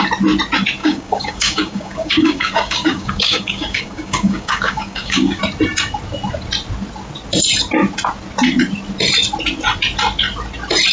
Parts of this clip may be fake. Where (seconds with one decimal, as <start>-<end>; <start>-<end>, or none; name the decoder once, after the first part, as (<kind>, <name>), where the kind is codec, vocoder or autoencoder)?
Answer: 0.8-5.4 (codec, DAC)